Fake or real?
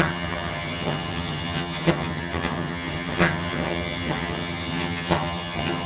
fake